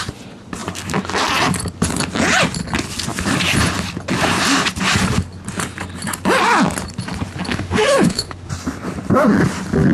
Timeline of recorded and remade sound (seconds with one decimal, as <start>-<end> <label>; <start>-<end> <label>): 0.0-7.5 recorded; 7.5-8.5 remade; 8.5-9.9 recorded